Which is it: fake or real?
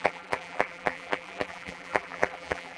fake